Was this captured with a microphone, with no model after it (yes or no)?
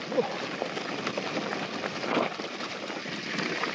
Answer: yes